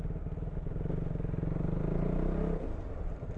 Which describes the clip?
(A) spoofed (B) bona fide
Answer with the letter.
B